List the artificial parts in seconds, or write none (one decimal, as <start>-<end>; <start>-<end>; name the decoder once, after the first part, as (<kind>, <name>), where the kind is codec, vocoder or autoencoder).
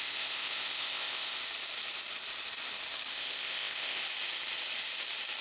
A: 0.0-1.4 (codec, ZipCodec); 3.1-4.0